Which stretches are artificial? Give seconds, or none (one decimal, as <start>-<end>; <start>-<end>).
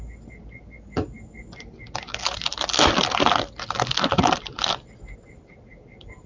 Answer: none